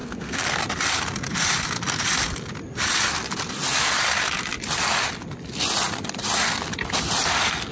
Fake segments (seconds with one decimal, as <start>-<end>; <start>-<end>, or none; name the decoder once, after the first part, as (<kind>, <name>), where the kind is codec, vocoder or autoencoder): 0.0-0.6 (codec, SNAC)